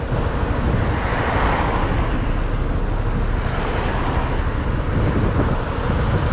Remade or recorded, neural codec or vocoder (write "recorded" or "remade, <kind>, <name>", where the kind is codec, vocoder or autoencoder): recorded